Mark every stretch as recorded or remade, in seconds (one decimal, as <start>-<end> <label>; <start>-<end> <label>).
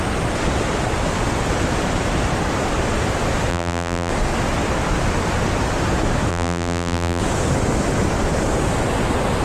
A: 0.0-3.5 recorded; 3.5-4.1 remade; 4.1-6.3 recorded; 6.3-7.2 remade; 7.2-9.4 recorded